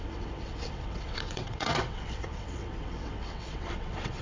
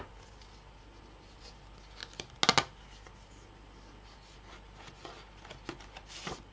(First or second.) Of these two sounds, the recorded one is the second